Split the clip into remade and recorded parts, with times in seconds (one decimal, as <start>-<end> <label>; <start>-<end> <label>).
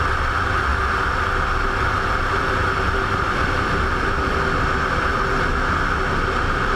0.0-6.8 recorded